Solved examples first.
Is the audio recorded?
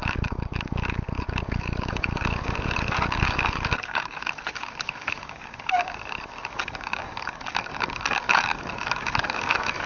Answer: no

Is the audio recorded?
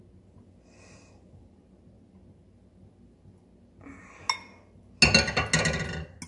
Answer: yes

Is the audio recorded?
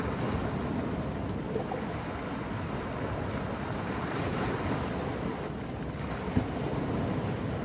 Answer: yes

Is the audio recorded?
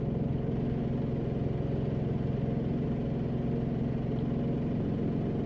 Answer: yes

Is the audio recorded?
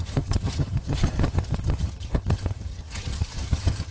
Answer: no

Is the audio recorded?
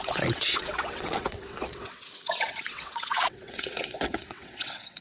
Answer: no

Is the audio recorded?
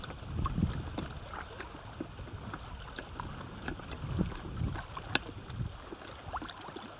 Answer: yes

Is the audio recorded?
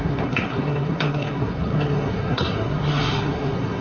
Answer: no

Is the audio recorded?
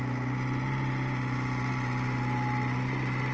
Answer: yes